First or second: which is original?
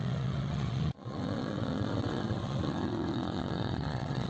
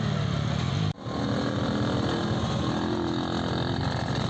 second